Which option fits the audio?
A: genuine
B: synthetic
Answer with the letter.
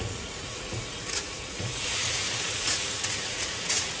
B